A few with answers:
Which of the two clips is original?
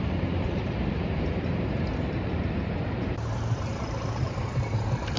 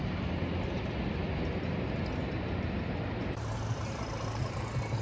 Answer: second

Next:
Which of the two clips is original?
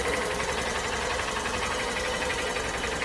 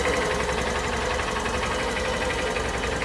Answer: second